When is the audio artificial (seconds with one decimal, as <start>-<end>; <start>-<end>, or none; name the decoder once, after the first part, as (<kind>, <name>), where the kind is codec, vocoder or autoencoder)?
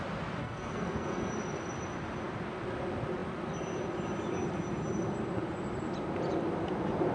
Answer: 0.4-1.3 (codec, SNAC)